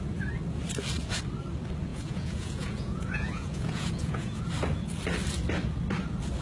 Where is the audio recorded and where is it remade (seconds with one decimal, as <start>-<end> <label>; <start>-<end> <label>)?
0.0-1.9 recorded; 1.9-4.4 remade; 4.4-6.4 recorded